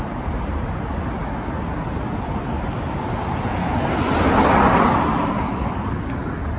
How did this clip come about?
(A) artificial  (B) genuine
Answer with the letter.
B